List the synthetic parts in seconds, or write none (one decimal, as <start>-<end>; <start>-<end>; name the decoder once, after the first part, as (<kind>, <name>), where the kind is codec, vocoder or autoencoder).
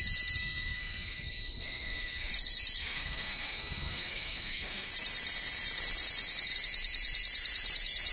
0.4-2.3 (codec, SNAC); 2.8-4.9